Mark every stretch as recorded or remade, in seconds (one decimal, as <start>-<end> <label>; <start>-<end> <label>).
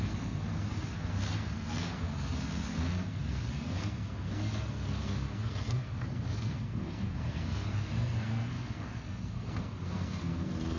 0.0-10.8 remade